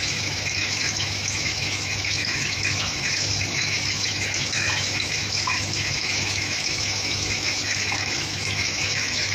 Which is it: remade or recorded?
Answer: remade